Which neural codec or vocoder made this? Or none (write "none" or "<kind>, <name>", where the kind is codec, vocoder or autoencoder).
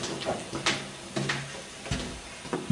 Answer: none